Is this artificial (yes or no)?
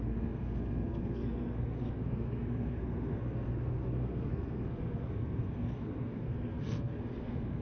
yes